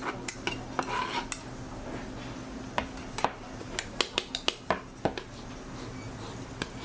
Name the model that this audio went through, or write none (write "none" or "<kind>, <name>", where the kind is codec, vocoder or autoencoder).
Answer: none